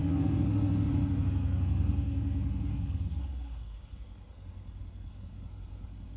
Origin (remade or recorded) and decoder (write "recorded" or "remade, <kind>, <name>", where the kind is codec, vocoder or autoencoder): remade, codec, SNAC